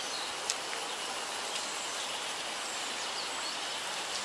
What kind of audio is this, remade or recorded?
recorded